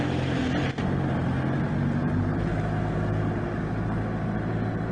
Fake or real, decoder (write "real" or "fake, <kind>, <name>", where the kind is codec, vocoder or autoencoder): real